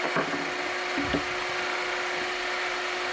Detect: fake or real real